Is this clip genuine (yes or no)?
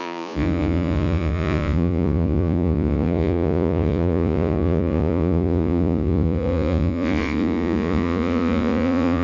no